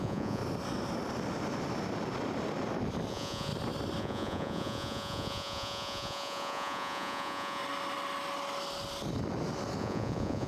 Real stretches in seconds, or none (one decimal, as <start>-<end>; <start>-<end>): 0.4-3.1; 3.5-4.0; 7.6-9.8